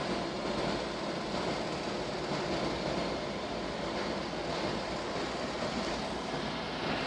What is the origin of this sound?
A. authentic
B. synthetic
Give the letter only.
A